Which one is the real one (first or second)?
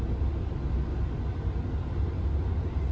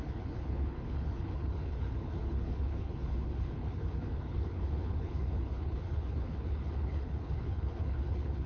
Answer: first